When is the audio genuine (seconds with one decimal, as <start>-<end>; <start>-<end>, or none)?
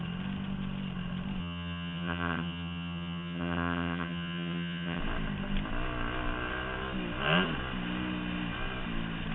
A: 0.0-1.4; 5.0-9.3